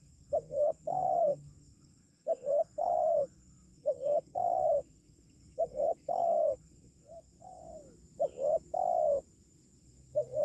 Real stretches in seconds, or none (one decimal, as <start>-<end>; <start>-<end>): 7.6-9.8